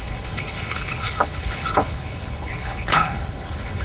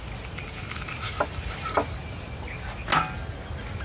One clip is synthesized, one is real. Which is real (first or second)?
second